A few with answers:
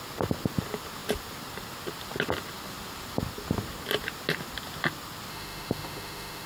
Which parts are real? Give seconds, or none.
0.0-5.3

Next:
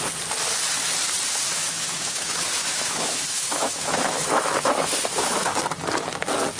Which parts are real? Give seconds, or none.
0.0-1.5; 5.5-6.6

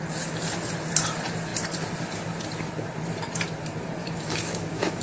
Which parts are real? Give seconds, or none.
0.0-4.0

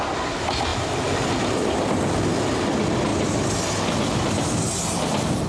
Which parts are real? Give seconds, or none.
0.0-5.5